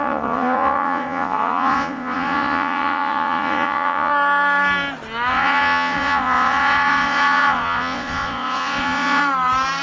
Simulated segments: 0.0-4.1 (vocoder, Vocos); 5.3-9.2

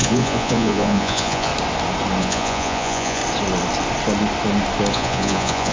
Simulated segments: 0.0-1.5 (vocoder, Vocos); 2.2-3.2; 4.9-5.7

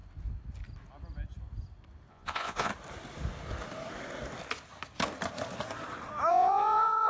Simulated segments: 2.1-2.7 (vocoder, Vocos); 6.3-7.1